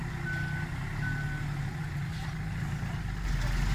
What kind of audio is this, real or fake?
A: real